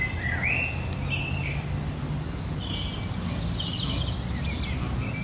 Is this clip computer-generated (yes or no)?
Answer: no